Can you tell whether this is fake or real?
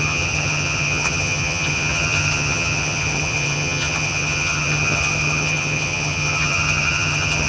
fake